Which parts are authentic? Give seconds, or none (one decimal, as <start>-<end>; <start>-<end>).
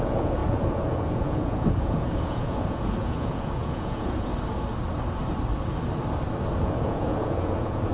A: 4.3-6.6